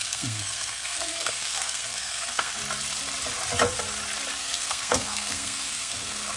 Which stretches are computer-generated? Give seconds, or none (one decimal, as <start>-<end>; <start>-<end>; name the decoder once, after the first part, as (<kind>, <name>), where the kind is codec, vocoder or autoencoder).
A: 0.0-2.6 (codec, SNAC); 4.4-6.4